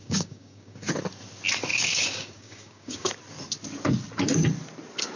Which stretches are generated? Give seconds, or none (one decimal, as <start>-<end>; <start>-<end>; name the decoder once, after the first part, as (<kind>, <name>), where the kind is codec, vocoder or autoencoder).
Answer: 0.0-0.9 (codec, DAC); 1.7-3.1